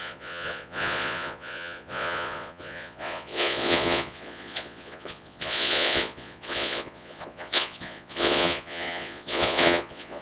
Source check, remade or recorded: remade